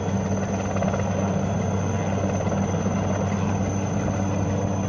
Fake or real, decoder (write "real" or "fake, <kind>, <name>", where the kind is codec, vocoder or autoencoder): real